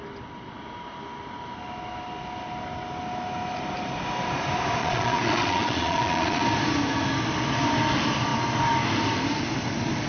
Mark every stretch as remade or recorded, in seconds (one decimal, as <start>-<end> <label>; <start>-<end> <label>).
0.0-4.8 recorded; 4.8-6.4 remade; 6.4-10.1 recorded